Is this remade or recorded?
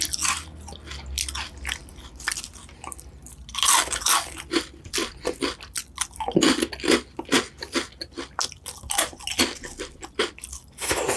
recorded